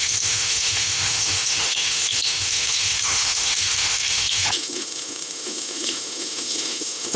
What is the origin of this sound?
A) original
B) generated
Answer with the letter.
B